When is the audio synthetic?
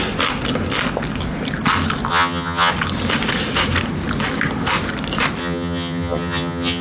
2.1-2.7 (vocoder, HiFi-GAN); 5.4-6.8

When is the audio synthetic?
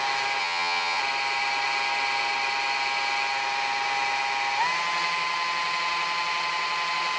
0.4-1.0 (vocoder, HiFi-GAN)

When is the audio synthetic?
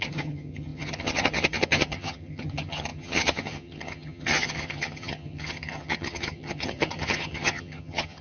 0.0-8.2 (vocoder, HiFi-GAN)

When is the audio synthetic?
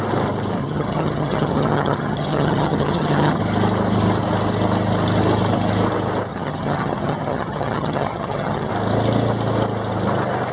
0.6-3.4 (vocoder, HiFi-GAN); 6.3-8.7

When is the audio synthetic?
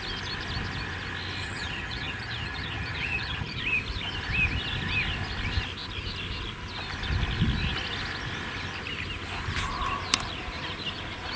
1.4-3.6 (vocoder, HiFi-GAN)